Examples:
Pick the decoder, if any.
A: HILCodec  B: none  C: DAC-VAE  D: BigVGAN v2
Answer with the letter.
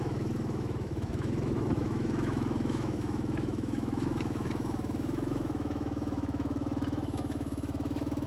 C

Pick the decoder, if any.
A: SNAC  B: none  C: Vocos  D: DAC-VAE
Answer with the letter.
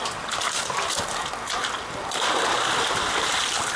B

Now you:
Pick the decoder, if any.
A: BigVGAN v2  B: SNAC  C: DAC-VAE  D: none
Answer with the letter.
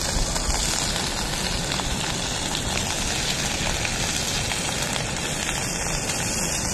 D